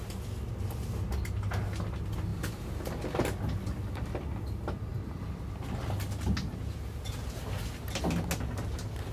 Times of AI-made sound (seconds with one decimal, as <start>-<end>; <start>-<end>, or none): 2.3-3.0